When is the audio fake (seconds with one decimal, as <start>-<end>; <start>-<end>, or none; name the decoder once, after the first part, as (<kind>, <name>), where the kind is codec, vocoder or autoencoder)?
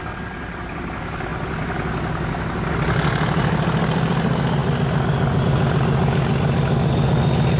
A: none